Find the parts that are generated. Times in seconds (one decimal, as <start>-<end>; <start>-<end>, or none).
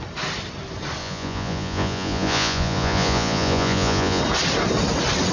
1.0-4.2